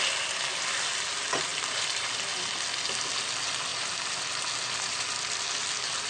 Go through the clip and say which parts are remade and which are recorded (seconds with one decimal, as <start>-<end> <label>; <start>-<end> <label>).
0.0-1.5 recorded; 1.5-3.1 remade; 3.1-3.7 recorded; 3.7-4.3 remade; 4.3-6.1 recorded